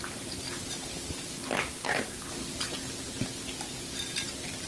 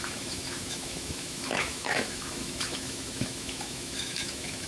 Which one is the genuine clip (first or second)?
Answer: first